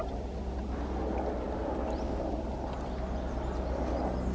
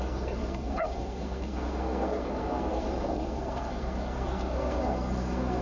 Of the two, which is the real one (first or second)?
first